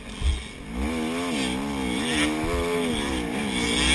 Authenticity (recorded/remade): recorded